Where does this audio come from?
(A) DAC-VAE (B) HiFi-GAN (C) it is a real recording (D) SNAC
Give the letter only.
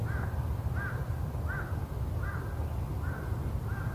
C